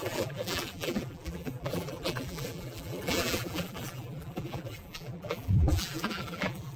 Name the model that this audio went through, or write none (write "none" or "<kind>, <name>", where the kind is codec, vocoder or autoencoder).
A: vocoder, BigVGAN v2